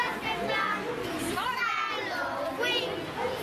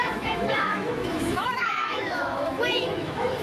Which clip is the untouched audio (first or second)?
first